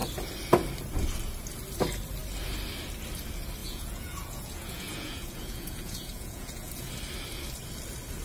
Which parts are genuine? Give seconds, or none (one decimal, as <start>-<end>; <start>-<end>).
0.0-3.6; 6.9-8.2